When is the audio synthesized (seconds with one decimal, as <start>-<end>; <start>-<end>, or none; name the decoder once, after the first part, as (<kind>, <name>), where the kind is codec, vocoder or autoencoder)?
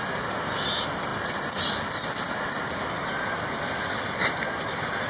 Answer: none